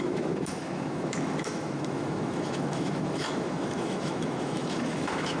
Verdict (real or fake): fake